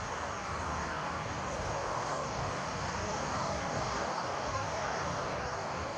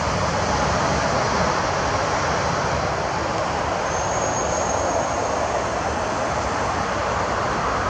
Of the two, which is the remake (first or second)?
first